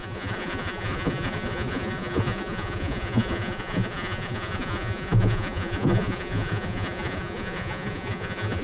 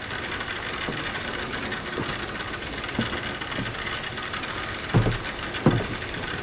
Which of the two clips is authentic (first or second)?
second